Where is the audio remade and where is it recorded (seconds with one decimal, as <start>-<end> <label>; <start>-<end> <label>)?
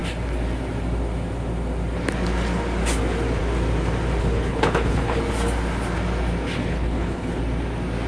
0.0-4.2 recorded; 4.2-5.2 remade; 5.2-6.6 recorded; 6.6-7.4 remade; 7.4-8.1 recorded